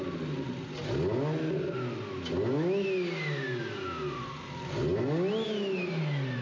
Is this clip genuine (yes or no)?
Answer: yes